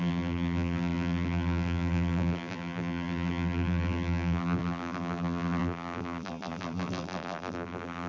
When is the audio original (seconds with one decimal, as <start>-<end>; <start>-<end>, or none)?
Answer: none